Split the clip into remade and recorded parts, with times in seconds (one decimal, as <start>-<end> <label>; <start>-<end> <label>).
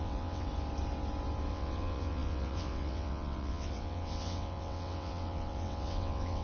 0.0-0.5 remade; 0.5-1.5 recorded; 1.5-6.4 remade